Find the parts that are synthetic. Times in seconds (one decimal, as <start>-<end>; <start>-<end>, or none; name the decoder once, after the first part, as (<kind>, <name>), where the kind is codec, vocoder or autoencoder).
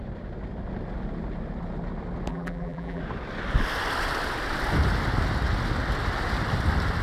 2.3-3.0 (vocoder, BigVGAN v2)